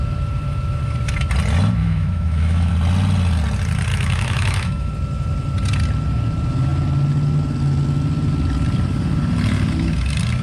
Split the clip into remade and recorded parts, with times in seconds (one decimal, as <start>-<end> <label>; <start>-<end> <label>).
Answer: 0.0-1.8 recorded; 1.8-2.7 remade; 2.7-3.9 recorded; 3.9-4.9 remade; 4.9-10.4 recorded